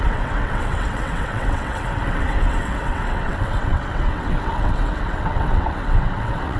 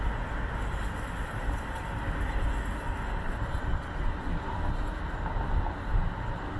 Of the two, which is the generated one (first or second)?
first